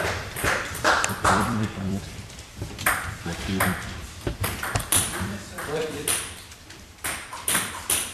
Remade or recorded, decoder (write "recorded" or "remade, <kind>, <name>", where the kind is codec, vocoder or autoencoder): remade, vocoder, BigVGAN v2